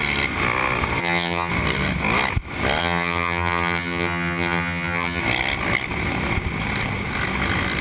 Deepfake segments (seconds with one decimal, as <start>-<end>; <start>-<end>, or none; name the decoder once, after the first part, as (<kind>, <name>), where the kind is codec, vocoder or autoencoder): 1.0-1.5 (vocoder, HiFi-GAN); 2.8-5.2